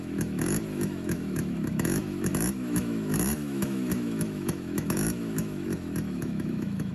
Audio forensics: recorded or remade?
remade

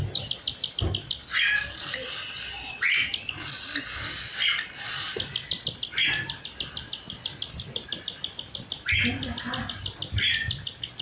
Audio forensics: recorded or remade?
recorded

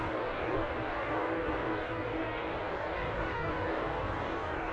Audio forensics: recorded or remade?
remade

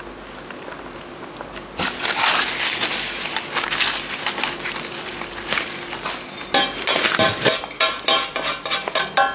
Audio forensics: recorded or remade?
recorded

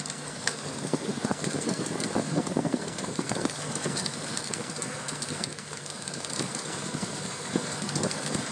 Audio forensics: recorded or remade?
remade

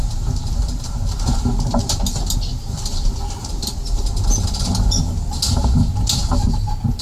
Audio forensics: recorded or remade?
recorded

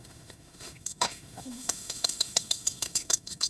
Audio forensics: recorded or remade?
remade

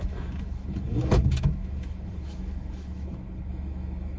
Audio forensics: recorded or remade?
remade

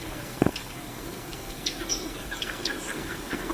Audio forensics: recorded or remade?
remade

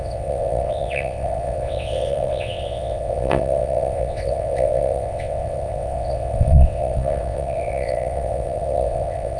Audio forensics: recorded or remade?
remade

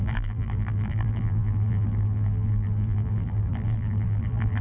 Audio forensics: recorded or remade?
remade